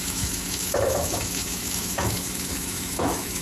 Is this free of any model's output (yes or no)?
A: no